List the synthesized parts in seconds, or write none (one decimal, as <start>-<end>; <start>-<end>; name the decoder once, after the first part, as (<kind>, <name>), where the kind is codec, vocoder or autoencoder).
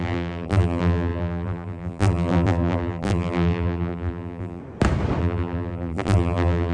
0.0-4.6 (vocoder, BigVGAN v2); 5.2-6.7